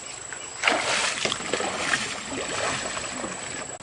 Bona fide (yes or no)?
yes